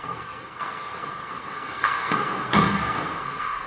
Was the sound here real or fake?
fake